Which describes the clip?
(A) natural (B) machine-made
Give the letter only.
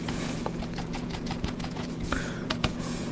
B